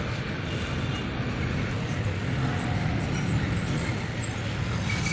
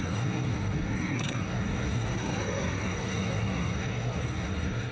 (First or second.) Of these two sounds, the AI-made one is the second